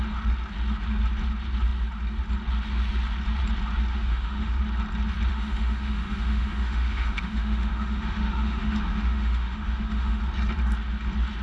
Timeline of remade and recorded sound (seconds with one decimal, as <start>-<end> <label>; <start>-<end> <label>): 0.0-3.9 recorded; 3.9-4.6 remade; 4.6-5.3 recorded; 5.3-10.2 remade; 10.2-11.4 recorded